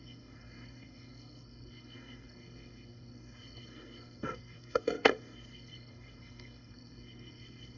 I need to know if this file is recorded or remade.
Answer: remade